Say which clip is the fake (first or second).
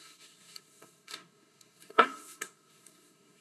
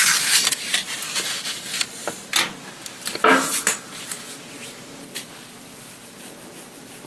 first